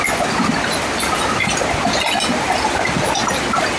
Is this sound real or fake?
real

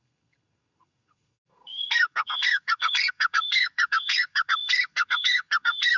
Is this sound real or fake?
fake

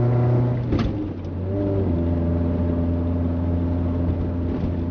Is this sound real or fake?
real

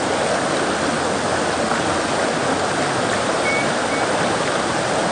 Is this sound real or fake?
real